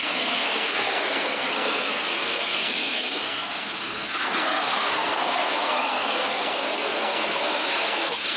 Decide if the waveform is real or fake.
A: fake